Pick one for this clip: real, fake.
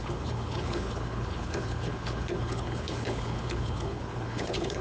fake